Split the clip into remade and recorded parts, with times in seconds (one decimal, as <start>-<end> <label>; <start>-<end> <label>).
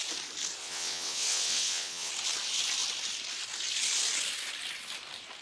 0.0-0.6 recorded; 0.6-2.1 remade; 2.1-5.4 recorded